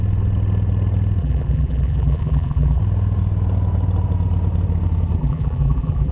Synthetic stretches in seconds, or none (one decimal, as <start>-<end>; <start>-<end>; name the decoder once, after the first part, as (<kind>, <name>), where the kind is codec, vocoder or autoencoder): 1.2-2.8 (vocoder, BigVGAN v2); 5.2-6.1